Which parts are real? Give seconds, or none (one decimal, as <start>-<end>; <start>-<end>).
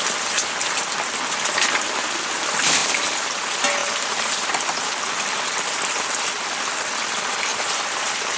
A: 0.0-2.8; 3.4-3.8; 4.9-7.5